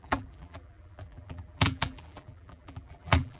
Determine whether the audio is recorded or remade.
remade